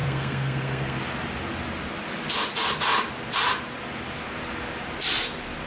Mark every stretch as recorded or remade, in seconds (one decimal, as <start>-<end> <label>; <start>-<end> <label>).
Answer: 0.0-1.0 remade; 1.0-5.7 recorded

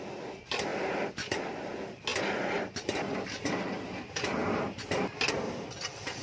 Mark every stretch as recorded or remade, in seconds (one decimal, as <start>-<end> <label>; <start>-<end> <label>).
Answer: 0.0-2.1 recorded; 2.1-3.7 remade; 3.7-6.2 recorded

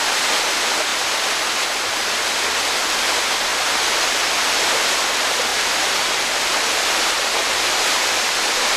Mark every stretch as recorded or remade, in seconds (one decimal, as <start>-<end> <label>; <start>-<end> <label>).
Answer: 0.0-3.5 recorded; 3.5-4.4 remade; 4.4-5.5 recorded; 5.5-8.8 remade

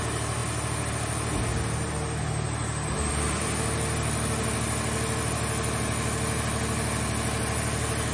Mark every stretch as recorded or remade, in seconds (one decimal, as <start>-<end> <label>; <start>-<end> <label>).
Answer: 0.0-8.1 recorded

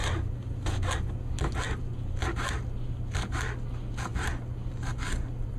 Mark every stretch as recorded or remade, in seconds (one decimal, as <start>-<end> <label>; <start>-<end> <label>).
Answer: 0.0-5.6 recorded